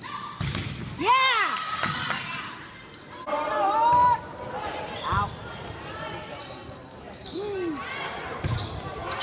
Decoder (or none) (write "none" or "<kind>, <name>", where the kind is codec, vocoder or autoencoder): none